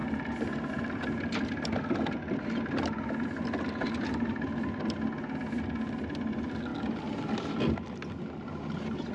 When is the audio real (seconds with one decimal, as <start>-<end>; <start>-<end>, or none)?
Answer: 0.0-9.1